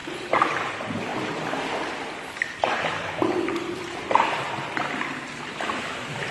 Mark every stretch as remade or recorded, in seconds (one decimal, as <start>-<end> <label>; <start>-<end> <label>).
0.0-0.7 recorded; 0.7-6.3 remade